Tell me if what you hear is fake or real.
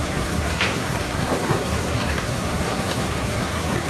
fake